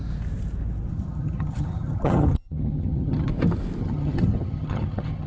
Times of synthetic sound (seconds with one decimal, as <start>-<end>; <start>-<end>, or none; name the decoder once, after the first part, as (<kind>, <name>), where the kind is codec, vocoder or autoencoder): 0.9-3.3 (vocoder, HiFi-GAN); 3.8-5.3